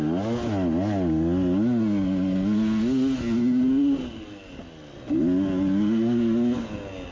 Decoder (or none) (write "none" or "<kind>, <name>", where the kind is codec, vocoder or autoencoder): none